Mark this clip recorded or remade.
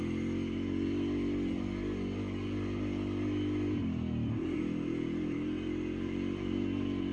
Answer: recorded